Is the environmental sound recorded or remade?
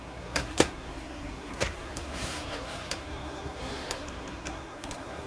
remade